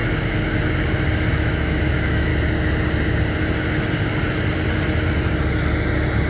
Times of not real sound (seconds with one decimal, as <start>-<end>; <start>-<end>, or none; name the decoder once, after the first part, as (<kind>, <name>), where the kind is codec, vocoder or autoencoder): 1.3-2.3 (autoencoder, DAC-VAE)